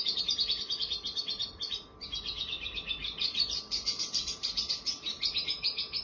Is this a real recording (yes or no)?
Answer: no